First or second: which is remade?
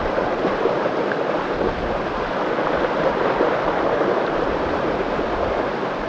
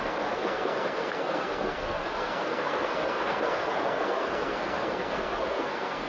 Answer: second